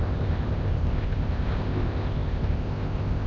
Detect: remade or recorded remade